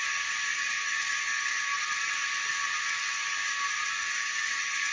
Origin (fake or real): real